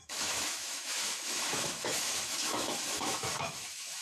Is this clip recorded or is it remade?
remade